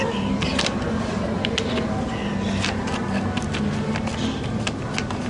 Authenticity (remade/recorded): recorded